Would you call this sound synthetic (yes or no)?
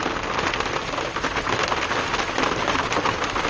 no